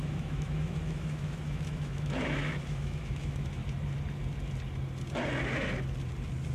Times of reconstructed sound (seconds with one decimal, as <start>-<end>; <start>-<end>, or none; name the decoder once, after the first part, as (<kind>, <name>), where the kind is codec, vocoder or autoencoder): 0.0-3.6 (autoencoder, DAC-VAE)